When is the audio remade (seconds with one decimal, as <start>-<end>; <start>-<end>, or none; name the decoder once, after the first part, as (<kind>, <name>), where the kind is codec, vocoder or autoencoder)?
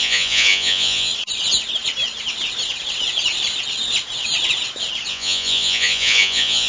0.0-1.1 (vocoder, Vocos); 5.1-6.7